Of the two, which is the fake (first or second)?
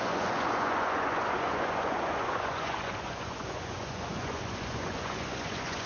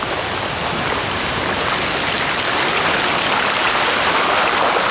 first